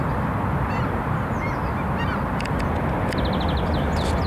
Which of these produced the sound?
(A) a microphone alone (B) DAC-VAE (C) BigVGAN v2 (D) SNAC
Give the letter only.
A